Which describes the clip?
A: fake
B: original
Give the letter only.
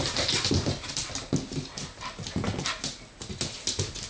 B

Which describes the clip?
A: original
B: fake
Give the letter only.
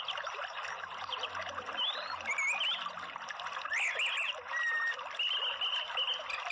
A